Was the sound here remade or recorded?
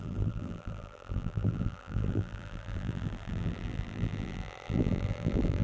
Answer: remade